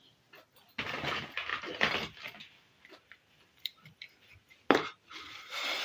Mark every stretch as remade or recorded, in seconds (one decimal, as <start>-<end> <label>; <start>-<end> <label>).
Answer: 0.0-5.8 recorded